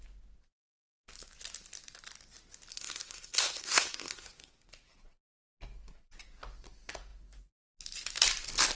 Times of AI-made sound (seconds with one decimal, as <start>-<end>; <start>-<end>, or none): 2.7-4.7